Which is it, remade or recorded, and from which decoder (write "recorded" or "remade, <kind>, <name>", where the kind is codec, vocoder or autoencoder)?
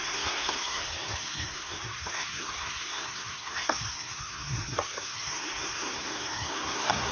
remade, codec, SNAC